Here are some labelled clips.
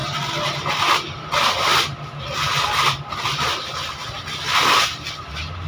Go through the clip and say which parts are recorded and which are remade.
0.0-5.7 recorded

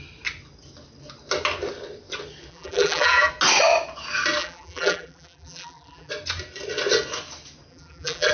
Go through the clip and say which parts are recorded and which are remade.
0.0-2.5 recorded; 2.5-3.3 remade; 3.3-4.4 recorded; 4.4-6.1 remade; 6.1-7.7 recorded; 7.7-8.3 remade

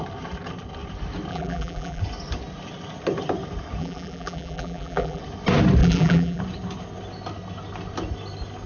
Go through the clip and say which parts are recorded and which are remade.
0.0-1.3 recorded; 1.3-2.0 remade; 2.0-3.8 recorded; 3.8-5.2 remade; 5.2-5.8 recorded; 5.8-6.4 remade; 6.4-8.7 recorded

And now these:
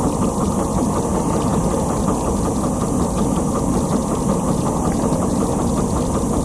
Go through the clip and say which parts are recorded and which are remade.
0.0-6.4 recorded

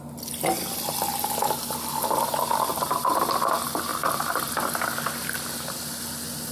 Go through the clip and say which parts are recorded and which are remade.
0.0-2.7 recorded; 2.7-3.2 remade; 3.2-6.5 recorded